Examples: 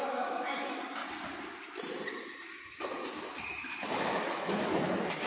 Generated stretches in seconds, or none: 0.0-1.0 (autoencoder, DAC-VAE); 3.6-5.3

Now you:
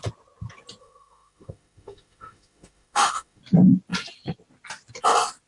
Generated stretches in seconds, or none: 0.8-3.4 (autoencoder, DAC-VAE)

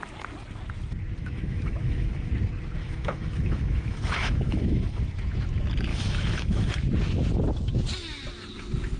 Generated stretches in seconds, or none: 1.2-2.3 (autoencoder, DAC-VAE); 2.8-5.0; 5.9-6.7